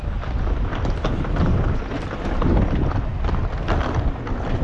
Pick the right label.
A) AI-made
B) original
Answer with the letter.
B